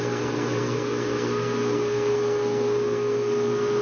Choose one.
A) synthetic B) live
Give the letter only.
A